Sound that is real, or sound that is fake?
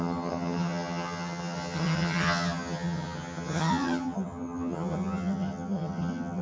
fake